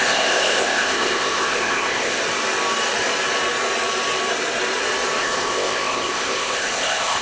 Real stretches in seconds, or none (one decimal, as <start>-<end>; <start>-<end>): 2.2-5.2